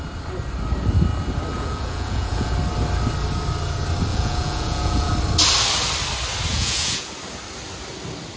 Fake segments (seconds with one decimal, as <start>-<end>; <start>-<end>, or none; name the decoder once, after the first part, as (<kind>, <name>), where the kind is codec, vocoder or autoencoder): 1.5-2.5 (vocoder, Vocos); 4.1-5.1; 6.5-7.1